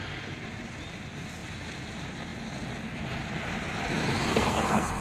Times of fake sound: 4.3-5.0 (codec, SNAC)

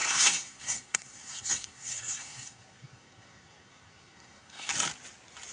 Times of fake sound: 0.0-4.7 (codec, SNAC)